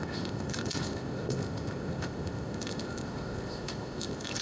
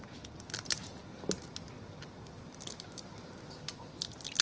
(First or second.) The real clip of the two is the second